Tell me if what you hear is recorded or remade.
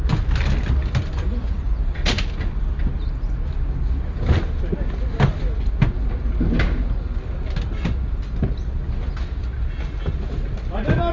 recorded